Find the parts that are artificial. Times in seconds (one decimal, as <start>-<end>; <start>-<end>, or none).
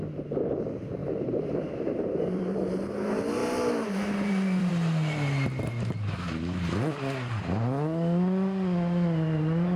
1.0-2.7; 3.4-4.7